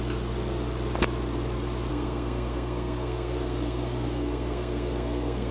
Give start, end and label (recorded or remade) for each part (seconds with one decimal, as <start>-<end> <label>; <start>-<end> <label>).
0.0-1.9 recorded; 1.9-5.5 remade